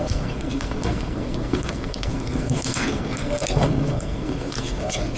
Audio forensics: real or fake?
fake